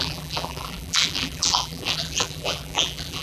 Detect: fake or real fake